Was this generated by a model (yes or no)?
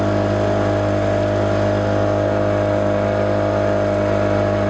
no